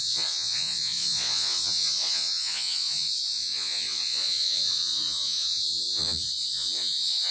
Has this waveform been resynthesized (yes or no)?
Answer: yes